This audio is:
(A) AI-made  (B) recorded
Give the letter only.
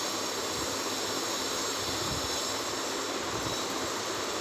B